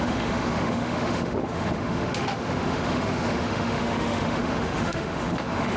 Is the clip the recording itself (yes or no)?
no